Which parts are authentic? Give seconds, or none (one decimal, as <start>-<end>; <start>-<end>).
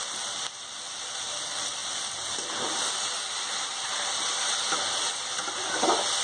0.0-6.2